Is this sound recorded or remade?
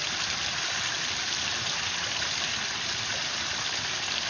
remade